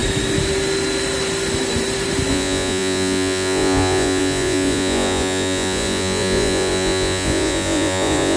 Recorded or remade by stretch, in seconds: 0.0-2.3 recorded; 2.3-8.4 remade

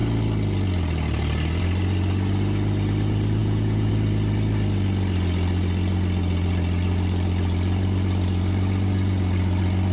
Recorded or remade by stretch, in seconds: 0.0-3.4 recorded; 3.4-3.9 remade; 3.9-9.9 recorded

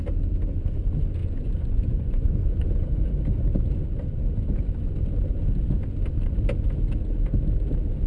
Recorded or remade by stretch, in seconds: 0.0-1.2 recorded; 1.2-3.0 remade; 3.0-8.1 recorded